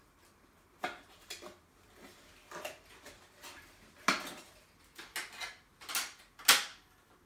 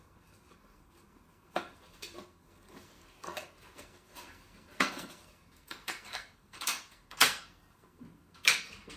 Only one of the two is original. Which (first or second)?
first